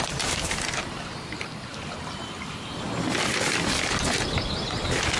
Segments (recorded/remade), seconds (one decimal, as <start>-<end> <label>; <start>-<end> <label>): 0.0-5.2 remade